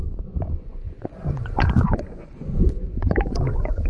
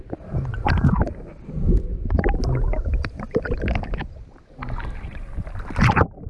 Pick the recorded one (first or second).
second